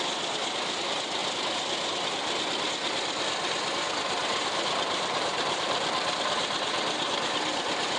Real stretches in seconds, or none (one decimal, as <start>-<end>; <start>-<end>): 0.0-4.2; 7.5-8.0